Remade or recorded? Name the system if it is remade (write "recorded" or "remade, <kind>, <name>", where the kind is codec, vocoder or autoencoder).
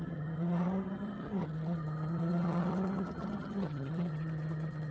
remade, vocoder, HiFi-GAN